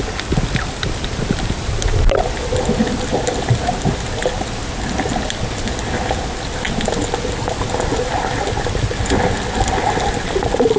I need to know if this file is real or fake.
real